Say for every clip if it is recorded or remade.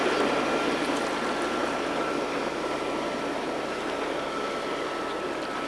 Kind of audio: recorded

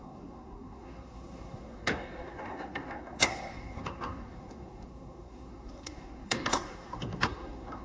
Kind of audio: remade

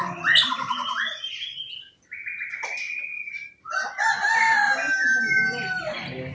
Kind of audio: recorded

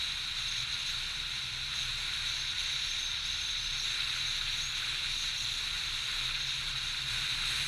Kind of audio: recorded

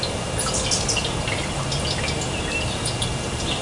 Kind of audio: recorded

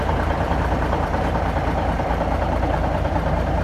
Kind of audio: remade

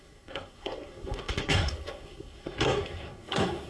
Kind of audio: remade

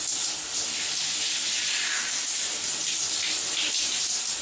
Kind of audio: remade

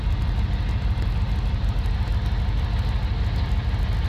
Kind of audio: recorded